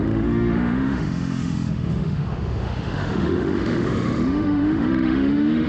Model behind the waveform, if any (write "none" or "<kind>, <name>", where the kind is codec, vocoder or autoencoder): autoencoder, DAC-VAE